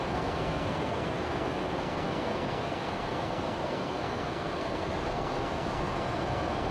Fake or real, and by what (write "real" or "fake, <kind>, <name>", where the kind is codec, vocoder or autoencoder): fake, codec, SNAC